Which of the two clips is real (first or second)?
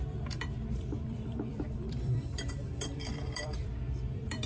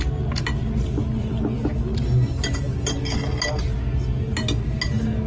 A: second